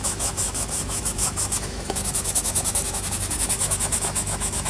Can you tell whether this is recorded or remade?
remade